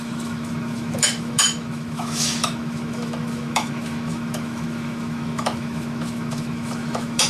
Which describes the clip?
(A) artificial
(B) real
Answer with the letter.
A